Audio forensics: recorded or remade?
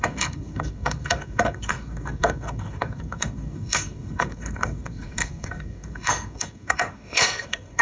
remade